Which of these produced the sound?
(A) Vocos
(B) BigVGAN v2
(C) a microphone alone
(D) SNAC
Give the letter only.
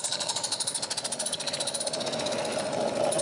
C